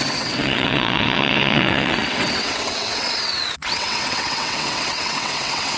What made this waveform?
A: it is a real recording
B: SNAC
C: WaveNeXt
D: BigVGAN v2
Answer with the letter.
C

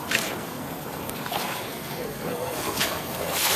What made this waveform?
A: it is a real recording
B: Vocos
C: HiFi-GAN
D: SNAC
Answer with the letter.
D